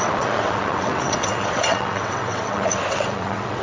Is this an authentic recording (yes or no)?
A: no